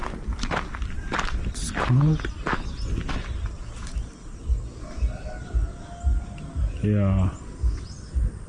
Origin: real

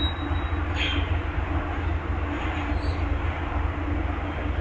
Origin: real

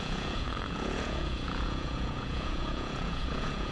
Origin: fake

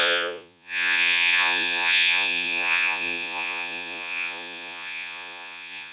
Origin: fake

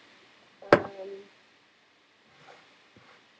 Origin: real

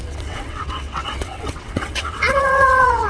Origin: fake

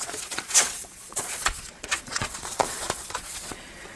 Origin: fake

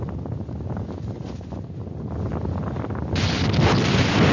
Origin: real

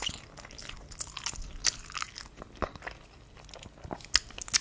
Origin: real